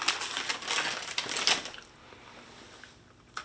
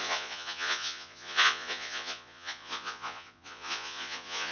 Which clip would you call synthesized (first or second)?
second